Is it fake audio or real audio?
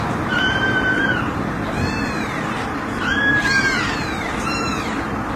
fake